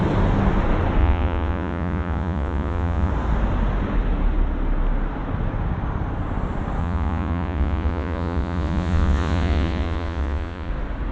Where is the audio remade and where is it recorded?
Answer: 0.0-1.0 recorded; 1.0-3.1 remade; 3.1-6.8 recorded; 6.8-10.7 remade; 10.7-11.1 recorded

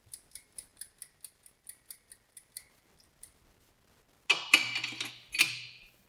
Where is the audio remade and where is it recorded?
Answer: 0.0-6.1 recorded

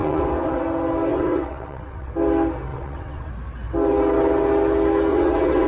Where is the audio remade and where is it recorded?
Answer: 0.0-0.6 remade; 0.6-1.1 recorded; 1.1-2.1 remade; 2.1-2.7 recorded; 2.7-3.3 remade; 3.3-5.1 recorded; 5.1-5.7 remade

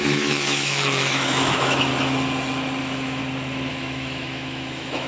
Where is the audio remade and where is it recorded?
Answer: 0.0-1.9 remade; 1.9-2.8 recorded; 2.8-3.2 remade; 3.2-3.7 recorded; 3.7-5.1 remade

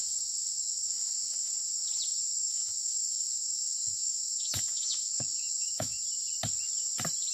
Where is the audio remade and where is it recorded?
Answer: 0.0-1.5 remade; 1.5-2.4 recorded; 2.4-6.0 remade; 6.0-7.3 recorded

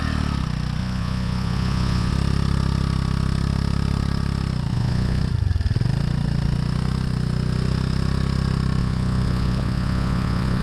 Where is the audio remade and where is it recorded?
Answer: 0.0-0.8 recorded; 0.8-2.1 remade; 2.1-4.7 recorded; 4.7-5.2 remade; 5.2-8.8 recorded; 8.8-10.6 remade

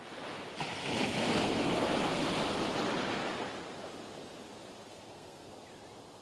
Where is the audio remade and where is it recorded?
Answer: 0.0-1.2 recorded; 1.2-2.3 remade; 2.3-4.9 recorded; 4.9-5.5 remade; 5.5-6.2 recorded